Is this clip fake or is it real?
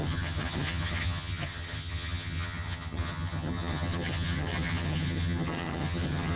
fake